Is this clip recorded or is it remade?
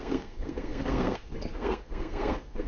remade